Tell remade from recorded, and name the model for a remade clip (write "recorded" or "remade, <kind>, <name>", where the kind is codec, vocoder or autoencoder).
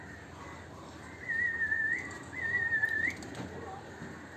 recorded